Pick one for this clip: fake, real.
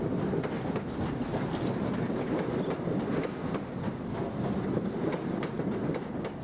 real